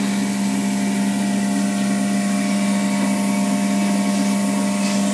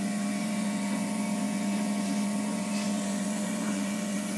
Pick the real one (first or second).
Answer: first